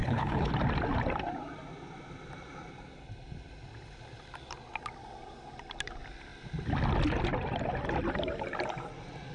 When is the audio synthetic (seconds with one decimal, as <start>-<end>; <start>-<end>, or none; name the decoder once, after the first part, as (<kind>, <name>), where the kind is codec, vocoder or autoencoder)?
0.0-0.5 (codec, HILCodec)